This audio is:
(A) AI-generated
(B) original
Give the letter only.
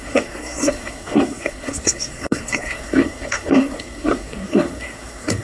A